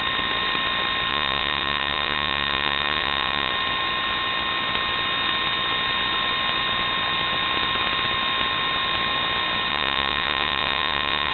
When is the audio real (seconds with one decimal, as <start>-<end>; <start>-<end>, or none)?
0.0-1.1; 3.5-9.7